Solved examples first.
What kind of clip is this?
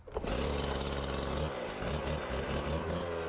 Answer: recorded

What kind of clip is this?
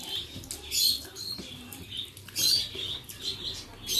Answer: recorded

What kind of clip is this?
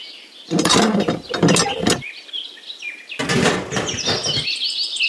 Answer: recorded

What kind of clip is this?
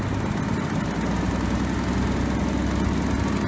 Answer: recorded